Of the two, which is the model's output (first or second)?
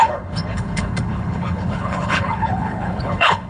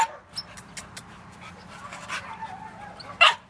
first